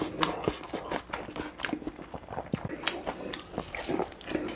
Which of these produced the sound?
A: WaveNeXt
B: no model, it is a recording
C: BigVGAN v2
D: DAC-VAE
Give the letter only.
B